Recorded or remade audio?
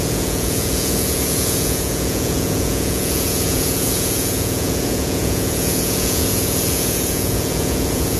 remade